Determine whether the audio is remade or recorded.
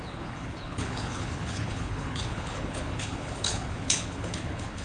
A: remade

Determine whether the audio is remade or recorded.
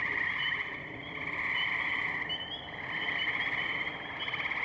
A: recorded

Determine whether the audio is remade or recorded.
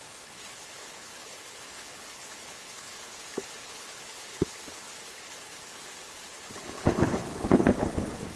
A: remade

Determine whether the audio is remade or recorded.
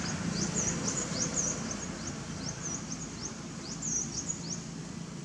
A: recorded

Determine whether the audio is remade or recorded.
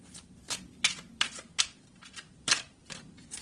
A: recorded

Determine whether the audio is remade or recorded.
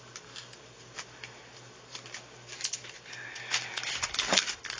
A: recorded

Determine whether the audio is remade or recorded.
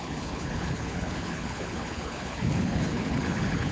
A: remade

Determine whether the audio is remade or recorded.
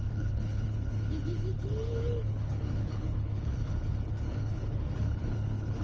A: remade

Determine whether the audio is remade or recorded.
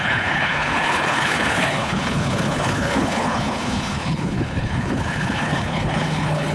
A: remade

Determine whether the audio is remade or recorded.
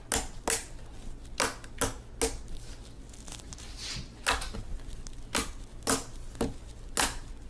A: recorded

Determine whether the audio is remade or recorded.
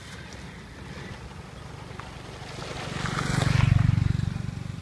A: recorded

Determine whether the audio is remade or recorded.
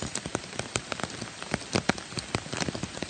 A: recorded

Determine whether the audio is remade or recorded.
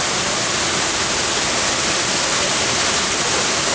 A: recorded